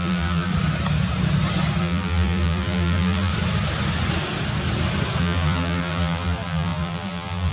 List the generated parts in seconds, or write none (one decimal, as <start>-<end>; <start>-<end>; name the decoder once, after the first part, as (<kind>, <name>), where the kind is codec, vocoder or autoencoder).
0.0-0.5 (vocoder, BigVGAN v2); 1.8-3.3; 5.2-7.5